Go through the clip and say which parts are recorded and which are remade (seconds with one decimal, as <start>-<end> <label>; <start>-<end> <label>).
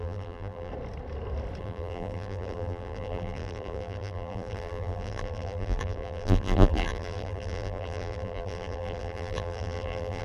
0.0-0.7 remade; 0.7-1.6 recorded; 1.6-10.2 remade